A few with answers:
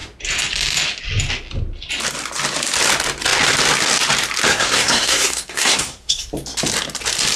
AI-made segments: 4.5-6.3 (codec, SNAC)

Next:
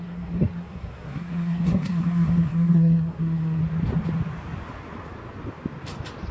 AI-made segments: 0.0-3.6 (codec, SNAC)

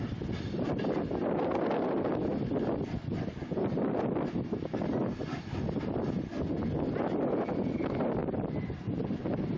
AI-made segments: none

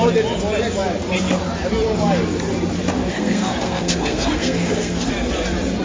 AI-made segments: 3.1-5.1 (codec, SNAC)